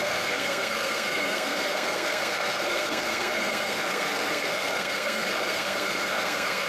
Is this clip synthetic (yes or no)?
yes